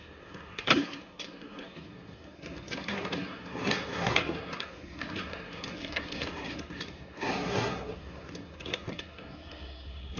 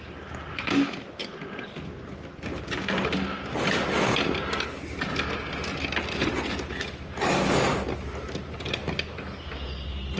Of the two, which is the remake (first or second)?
first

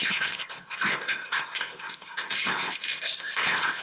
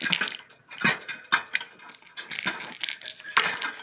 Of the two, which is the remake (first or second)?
first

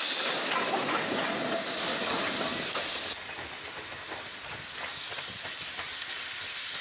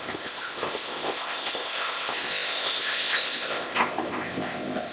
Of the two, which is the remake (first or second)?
second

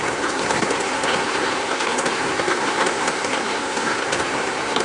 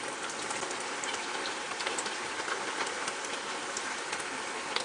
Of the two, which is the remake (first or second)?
first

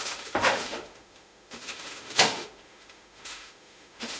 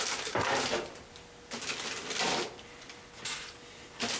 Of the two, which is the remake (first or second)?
first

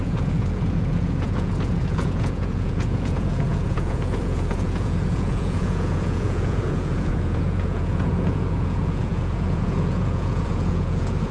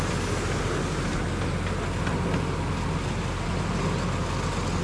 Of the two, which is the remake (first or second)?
first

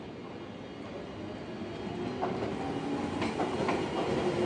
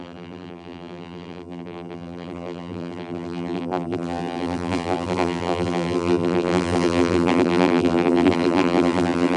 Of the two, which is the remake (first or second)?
second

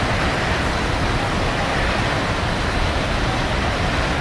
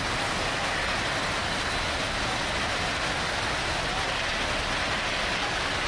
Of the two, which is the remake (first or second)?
first